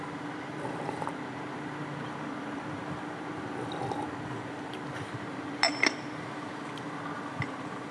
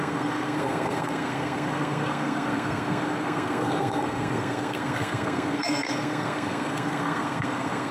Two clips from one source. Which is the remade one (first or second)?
second